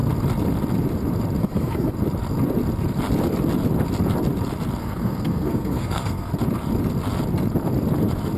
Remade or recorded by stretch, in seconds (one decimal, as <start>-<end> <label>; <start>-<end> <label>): 0.0-1.4 recorded; 1.4-1.9 remade; 1.9-4.8 recorded; 4.8-6.3 remade; 6.3-8.4 recorded